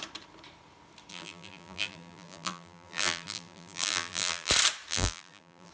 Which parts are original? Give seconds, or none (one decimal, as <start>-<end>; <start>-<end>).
0.0-1.1; 4.5-4.9